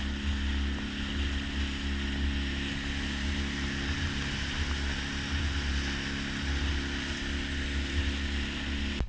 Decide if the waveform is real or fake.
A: real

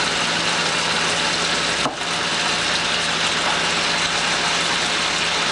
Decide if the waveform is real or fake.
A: real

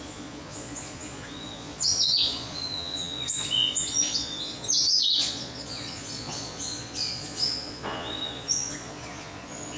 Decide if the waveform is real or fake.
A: fake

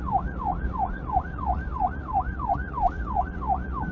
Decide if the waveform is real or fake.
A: fake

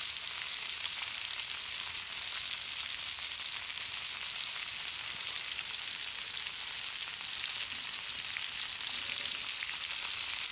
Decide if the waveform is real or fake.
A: real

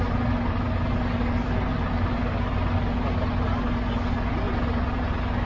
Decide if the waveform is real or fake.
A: real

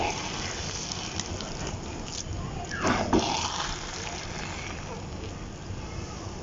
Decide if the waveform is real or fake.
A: real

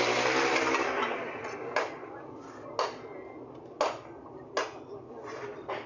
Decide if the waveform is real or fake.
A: real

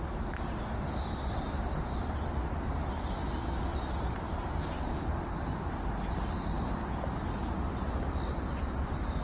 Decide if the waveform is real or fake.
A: real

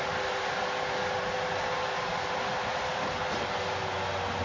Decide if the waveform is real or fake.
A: real